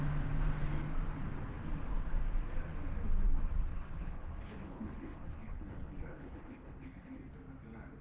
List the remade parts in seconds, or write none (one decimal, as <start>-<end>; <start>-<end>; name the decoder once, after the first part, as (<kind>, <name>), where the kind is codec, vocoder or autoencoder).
3.7-7.2 (codec, HILCodec)

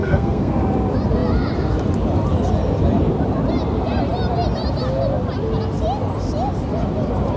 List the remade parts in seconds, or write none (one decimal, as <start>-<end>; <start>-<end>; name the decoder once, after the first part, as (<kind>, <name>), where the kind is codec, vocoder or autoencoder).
0.0-0.5 (codec, SNAC)

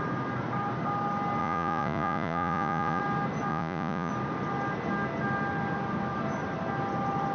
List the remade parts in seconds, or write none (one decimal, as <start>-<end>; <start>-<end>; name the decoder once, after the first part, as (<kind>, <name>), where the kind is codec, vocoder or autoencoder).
1.4-3.0 (vocoder, Vocos); 3.5-4.1

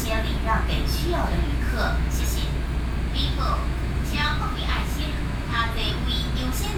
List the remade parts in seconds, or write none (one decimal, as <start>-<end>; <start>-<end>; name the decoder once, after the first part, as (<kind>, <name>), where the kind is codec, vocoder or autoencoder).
1.0-2.2 (autoencoder, DAC-VAE); 3.1-5.6

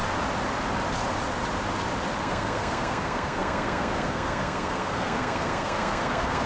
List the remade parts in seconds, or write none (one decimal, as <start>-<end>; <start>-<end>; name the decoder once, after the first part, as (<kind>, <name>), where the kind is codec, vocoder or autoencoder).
2.2-6.5 (codec, SNAC)

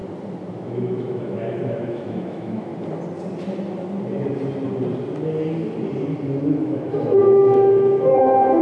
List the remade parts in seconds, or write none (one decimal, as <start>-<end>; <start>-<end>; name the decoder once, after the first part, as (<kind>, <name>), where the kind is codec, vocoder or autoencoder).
0.5-2.7 (autoencoder, DAC-VAE); 6.6-8.6

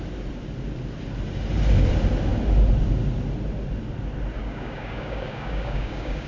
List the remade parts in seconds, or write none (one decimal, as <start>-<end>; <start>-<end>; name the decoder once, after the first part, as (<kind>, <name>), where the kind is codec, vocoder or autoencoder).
4.4-6.3 (codec, DAC)

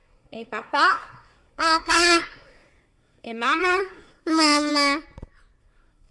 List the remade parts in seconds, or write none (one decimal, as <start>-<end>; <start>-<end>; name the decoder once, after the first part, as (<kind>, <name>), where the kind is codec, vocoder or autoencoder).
0.0-4.7 (codec, SNAC); 5.6-6.1